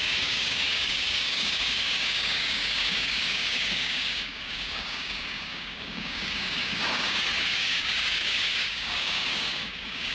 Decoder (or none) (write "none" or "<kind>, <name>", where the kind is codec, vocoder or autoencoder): codec, DAC